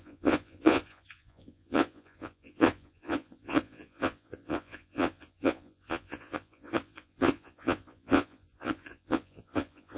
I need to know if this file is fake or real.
fake